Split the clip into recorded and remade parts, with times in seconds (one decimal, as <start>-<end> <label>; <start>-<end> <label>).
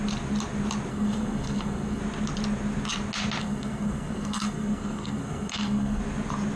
0.0-0.9 recorded; 0.9-2.0 remade; 2.0-3.4 recorded; 3.4-6.0 remade; 6.0-6.6 recorded